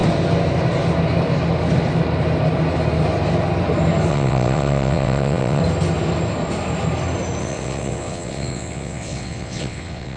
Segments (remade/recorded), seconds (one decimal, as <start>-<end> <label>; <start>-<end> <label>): 0.0-4.1 recorded; 4.1-5.6 remade; 5.6-7.4 recorded; 7.4-10.2 remade